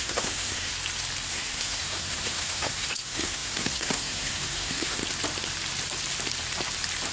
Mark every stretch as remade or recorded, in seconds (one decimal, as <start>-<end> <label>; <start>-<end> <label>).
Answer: 0.0-0.7 remade; 0.7-1.3 recorded; 1.3-5.0 remade; 5.0-7.1 recorded